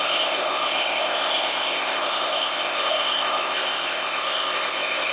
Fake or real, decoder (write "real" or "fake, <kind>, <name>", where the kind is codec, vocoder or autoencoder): fake, codec, ZipCodec